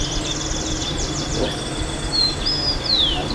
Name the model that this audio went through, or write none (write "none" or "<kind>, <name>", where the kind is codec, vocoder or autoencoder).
none